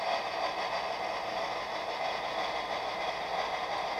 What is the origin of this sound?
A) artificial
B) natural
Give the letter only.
B